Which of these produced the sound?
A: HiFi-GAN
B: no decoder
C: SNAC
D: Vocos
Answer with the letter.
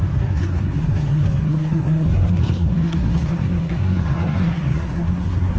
C